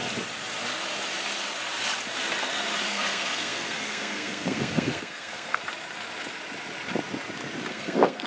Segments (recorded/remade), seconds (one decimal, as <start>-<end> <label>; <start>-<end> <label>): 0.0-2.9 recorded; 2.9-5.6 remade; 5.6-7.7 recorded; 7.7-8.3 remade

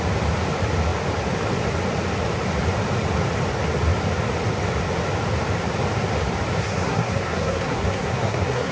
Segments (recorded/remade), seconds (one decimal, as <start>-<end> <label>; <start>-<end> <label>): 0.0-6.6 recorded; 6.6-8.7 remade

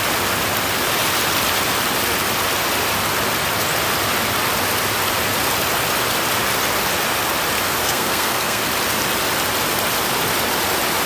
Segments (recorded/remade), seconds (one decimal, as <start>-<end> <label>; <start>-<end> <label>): 0.0-7.8 recorded; 7.8-8.6 remade; 8.6-11.1 recorded

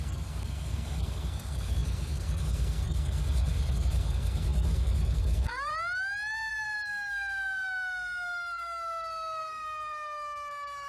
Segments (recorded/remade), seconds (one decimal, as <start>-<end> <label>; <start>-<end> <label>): 0.0-5.7 remade; 5.7-6.5 recorded; 6.5-10.9 remade

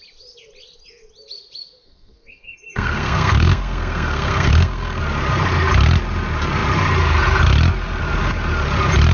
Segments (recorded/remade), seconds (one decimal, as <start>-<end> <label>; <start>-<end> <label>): 0.0-1.8 recorded; 1.8-5.0 remade; 5.0-9.1 recorded

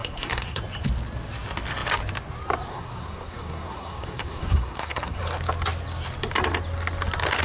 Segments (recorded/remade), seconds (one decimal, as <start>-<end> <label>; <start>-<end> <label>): 0.0-0.6 remade; 0.6-2.7 recorded; 2.7-5.2 remade; 5.2-7.4 recorded

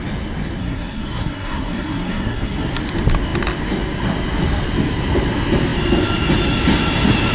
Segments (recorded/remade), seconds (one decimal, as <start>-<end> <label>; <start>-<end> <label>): 0.0-0.6 recorded; 0.6-2.8 remade; 2.8-7.3 recorded